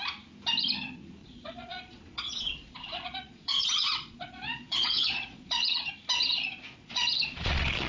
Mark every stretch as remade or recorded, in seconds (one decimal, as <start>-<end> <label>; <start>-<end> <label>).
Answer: 0.0-1.2 recorded; 1.2-5.9 remade; 5.9-6.8 recorded; 6.8-7.9 remade

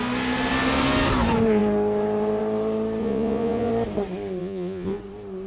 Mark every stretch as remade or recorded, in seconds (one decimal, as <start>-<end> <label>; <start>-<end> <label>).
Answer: 0.0-3.0 recorded; 3.0-3.7 remade; 3.7-4.4 recorded; 4.4-5.0 remade; 5.0-5.5 recorded